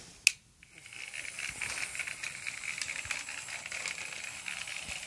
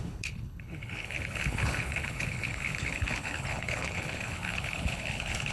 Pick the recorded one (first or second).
first